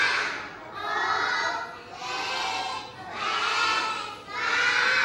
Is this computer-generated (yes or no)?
no